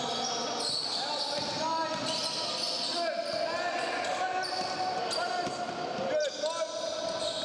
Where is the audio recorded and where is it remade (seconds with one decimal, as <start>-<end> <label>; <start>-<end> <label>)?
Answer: 0.0-7.4 recorded